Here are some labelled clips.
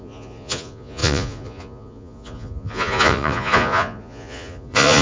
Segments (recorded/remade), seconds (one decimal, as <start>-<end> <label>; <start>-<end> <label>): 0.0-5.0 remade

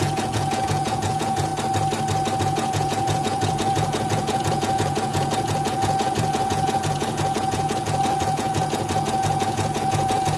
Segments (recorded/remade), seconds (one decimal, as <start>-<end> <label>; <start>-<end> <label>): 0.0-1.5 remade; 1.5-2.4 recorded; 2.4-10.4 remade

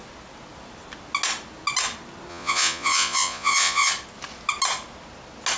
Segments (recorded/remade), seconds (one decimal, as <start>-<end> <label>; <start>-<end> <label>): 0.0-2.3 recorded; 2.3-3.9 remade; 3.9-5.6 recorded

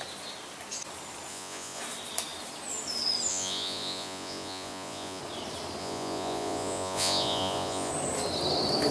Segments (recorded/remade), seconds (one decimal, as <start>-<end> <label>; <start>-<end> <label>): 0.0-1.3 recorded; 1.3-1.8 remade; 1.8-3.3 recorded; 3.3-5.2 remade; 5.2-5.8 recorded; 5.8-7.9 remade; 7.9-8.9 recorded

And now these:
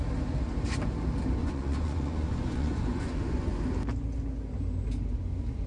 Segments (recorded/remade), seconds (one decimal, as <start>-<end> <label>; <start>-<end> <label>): 0.0-1.4 recorded; 1.4-3.6 remade; 3.6-5.7 recorded

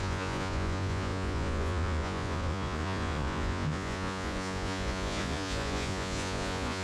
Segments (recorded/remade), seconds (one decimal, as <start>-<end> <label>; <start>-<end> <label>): 0.0-6.8 remade

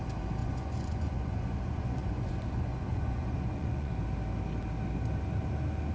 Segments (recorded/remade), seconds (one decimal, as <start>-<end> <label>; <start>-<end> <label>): 0.0-0.4 recorded; 0.4-3.9 remade; 3.9-5.9 recorded